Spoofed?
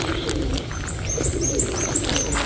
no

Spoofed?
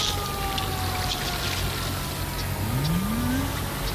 no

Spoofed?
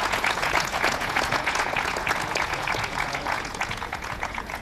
yes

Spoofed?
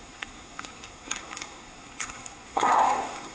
yes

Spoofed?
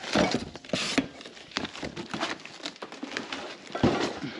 no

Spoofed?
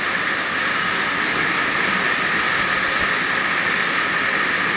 no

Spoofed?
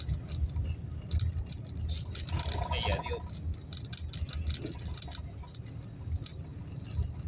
no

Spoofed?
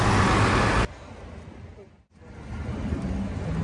no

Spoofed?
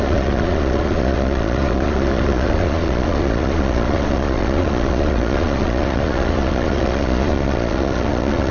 yes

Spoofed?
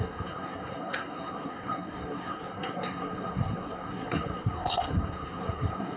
yes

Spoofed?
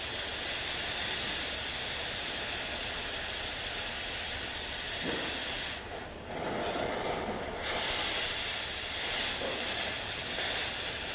no